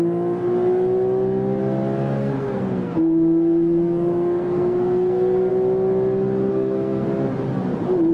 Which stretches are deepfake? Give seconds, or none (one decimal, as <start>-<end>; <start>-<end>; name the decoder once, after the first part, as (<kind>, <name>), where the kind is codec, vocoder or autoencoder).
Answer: 2.2-5.5 (codec, SNAC); 6.5-7.1